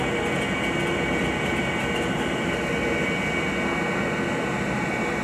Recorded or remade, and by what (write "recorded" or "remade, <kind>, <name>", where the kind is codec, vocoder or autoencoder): recorded